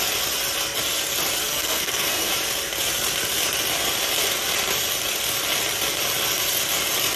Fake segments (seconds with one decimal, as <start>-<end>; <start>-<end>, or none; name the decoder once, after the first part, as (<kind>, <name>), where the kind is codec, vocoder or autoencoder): 1.4-2.3 (codec, SNAC)